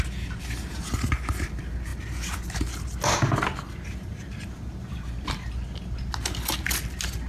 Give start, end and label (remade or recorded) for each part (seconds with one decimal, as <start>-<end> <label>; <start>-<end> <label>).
0.0-7.3 recorded